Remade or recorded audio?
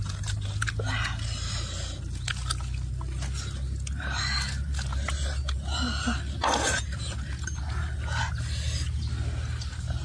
recorded